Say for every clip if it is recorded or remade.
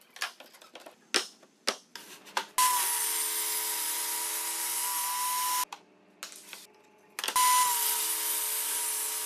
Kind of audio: recorded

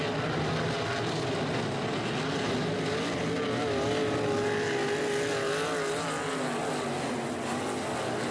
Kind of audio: recorded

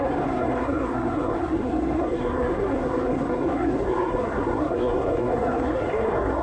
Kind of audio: remade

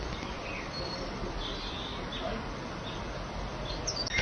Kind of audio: recorded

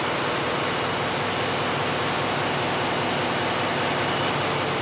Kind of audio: recorded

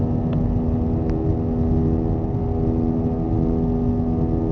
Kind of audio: recorded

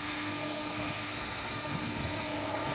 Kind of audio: remade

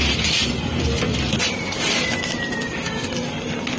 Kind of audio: recorded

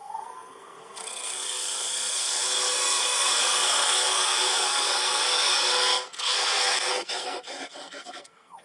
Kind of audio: remade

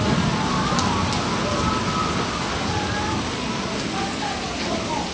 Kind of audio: recorded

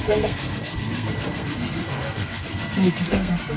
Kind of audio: remade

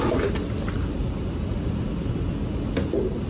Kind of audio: recorded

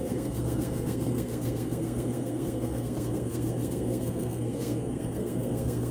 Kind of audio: remade